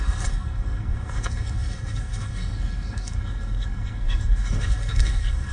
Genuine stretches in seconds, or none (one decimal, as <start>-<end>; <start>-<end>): none